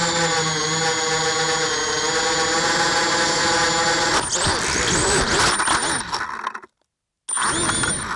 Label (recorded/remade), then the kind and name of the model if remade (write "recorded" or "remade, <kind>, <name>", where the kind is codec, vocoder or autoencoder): recorded